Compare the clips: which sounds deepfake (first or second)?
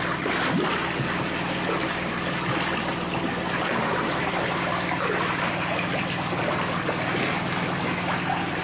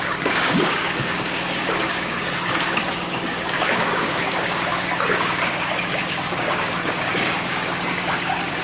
second